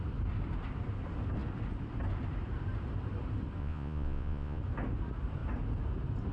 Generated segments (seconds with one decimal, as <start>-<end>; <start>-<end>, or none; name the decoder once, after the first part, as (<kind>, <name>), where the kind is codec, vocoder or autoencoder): 3.6-4.6 (vocoder, Vocos)